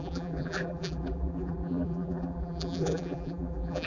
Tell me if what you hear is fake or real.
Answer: fake